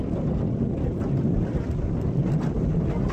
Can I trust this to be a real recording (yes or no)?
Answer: yes